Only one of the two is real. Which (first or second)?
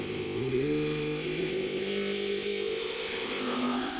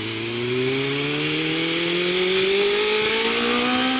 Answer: second